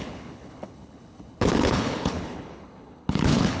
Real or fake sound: fake